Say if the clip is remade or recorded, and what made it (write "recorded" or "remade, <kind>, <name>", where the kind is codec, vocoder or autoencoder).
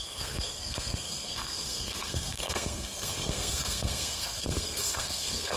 remade, codec, SNAC